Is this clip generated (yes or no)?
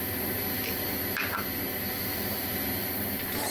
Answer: no